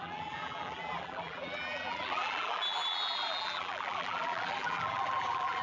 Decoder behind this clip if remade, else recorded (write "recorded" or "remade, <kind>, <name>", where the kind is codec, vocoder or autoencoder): remade, vocoder, BigVGAN v2